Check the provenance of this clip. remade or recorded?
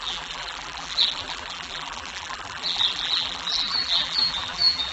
remade